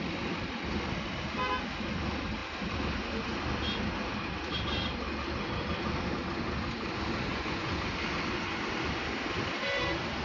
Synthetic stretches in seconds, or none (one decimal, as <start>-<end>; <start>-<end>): 7.3-7.9